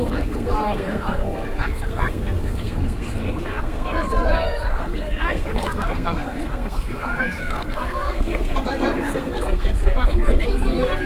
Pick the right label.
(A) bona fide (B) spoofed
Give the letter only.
B